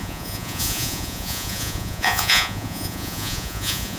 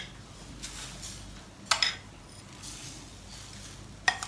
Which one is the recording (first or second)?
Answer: second